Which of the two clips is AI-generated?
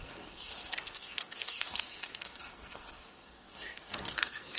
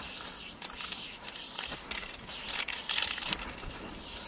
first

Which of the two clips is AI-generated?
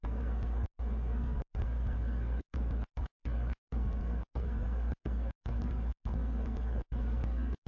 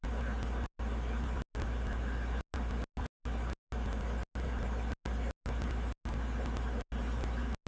first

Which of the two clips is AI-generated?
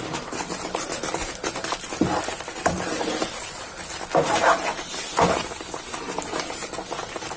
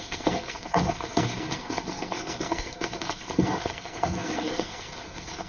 second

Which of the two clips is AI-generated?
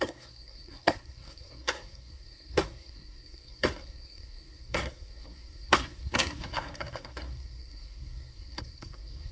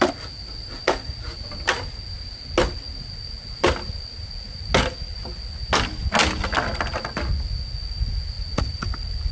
first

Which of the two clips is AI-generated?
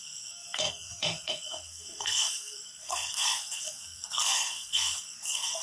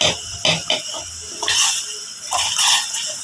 first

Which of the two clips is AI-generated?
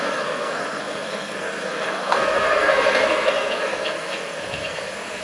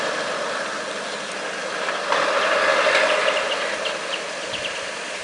first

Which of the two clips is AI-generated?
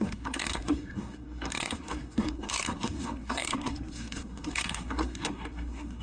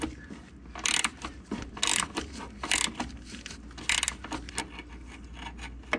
first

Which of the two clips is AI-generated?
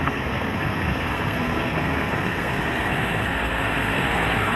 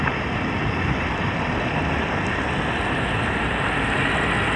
first